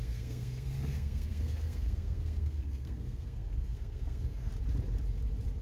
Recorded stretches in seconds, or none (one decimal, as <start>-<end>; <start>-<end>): 4.5-5.6